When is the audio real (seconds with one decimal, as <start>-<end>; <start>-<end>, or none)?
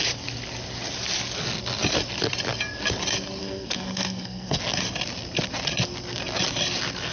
0.0-3.4; 4.6-7.1